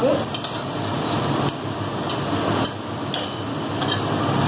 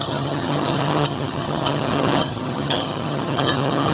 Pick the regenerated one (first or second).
second